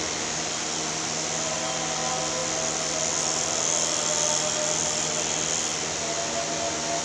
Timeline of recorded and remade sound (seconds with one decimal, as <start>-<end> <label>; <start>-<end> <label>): 0.0-7.0 recorded